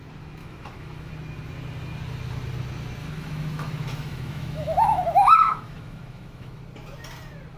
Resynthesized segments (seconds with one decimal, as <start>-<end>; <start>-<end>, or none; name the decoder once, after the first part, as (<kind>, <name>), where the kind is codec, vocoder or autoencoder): 0.4-1.1 (autoencoder, DAC-VAE); 3.0-6.6

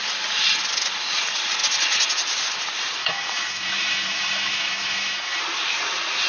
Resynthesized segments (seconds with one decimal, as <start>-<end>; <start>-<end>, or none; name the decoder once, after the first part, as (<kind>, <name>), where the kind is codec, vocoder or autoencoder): 3.0-5.4 (autoencoder, DAC-VAE)

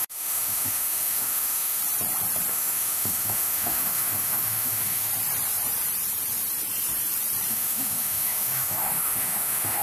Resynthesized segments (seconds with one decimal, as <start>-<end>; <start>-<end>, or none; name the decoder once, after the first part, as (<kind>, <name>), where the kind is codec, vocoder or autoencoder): 0.0-1.8 (autoencoder, DAC-VAE); 2.5-5.1; 7.5-9.8

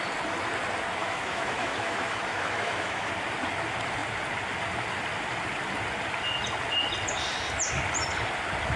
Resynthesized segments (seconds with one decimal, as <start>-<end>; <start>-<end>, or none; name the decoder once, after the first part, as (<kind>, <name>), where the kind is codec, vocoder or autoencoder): 1.0-3.1 (autoencoder, DAC-VAE)

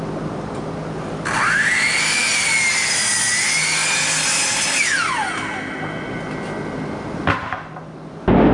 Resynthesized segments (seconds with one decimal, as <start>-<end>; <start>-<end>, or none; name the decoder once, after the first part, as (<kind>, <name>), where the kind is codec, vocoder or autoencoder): none

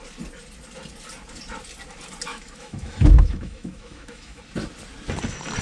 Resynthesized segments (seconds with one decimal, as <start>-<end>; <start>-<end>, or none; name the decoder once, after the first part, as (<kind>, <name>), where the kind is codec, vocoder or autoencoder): 2.3-4.4 (autoencoder, DAC-VAE)

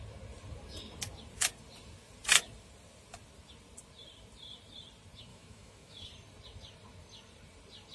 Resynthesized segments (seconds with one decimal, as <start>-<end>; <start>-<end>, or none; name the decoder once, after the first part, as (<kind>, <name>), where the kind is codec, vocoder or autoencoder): 5.3-6.0 (autoencoder, DAC-VAE)

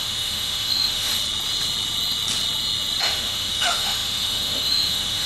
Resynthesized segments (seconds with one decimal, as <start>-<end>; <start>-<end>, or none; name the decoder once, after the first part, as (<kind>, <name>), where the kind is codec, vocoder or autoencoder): 0.0-1.1 (autoencoder, DAC-VAE); 3.0-5.3